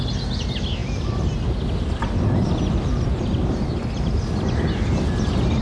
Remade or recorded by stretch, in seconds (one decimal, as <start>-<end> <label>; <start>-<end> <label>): 0.0-5.6 recorded